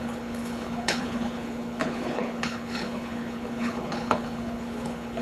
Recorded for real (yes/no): no